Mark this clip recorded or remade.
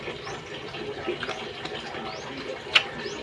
recorded